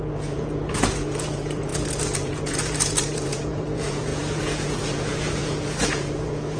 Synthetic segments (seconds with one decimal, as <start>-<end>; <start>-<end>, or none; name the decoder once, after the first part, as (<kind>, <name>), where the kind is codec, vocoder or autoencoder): 0.0-6.6 (vocoder, Vocos)